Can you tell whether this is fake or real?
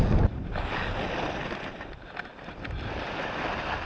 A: real